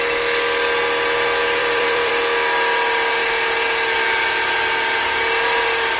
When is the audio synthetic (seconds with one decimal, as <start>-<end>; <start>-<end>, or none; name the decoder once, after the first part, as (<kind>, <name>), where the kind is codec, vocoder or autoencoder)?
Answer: 1.6-2.1 (vocoder, BigVGAN v2)